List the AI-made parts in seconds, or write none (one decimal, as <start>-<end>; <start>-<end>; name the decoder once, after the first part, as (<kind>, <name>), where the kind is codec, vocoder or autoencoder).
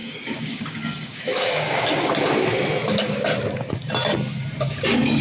0.0-2.1 (codec, DAC)